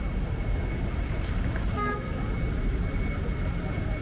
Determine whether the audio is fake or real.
real